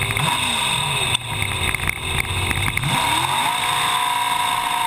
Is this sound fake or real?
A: real